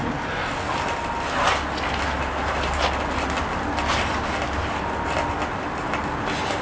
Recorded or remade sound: recorded